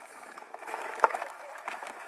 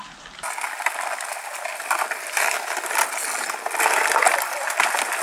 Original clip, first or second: second